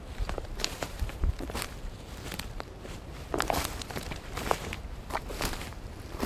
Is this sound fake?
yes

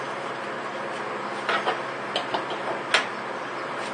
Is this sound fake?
no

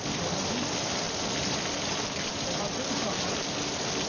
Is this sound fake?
no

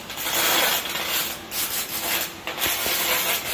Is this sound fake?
no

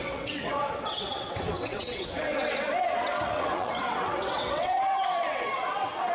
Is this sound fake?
yes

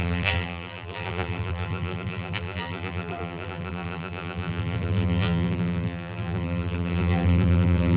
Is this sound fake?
yes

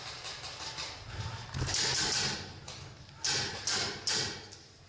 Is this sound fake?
no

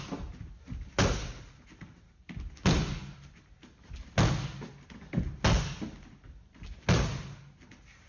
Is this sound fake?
no